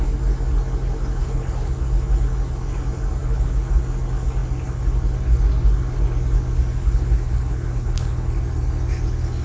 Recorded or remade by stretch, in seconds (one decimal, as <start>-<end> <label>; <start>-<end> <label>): 0.0-1.2 recorded; 1.2-1.7 remade; 1.7-3.2 recorded; 3.2-3.7 remade; 3.7-6.8 recorded; 6.8-8.3 remade; 8.3-9.4 recorded